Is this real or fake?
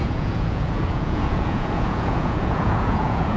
fake